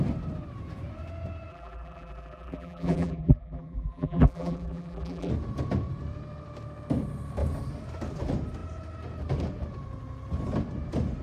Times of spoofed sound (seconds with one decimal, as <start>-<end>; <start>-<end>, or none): 1.5-5.3